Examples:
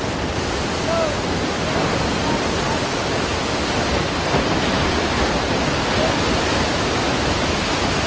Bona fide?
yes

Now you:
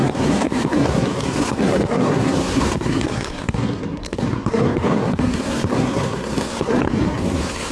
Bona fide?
no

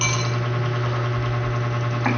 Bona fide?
yes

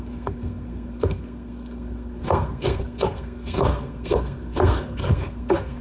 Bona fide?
no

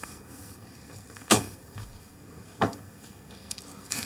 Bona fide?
no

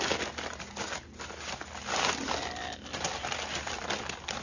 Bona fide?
yes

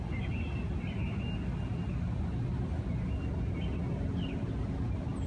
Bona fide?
yes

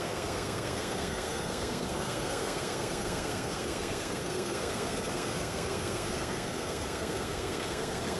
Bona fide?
no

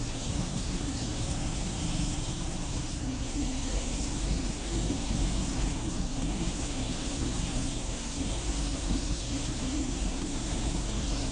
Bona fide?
no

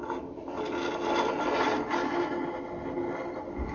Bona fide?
yes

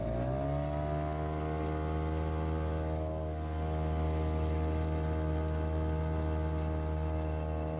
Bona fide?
yes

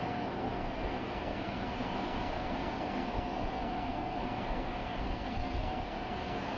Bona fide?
no